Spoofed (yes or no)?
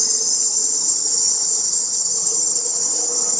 yes